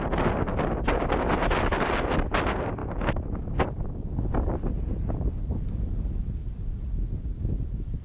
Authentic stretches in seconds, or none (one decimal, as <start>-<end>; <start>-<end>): 0.0-8.0